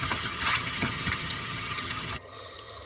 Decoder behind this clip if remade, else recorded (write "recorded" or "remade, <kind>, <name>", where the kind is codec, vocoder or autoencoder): remade, vocoder, HiFi-GAN